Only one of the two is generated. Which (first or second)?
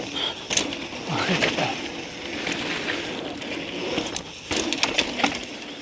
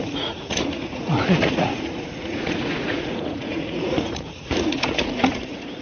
second